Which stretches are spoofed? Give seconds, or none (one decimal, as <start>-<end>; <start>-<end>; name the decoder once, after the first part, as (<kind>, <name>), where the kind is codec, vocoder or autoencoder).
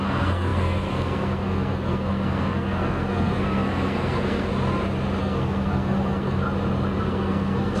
0.0-4.5 (codec, SNAC); 5.2-6.4; 7.0-7.8